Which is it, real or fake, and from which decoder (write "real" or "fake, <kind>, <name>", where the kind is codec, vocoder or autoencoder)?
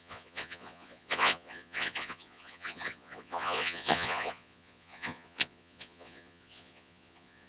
fake, vocoder, Vocos